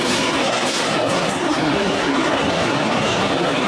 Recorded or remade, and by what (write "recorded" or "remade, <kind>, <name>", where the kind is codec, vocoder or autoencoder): remade, codec, SNAC